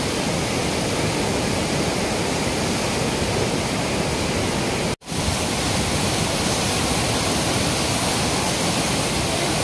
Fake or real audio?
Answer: real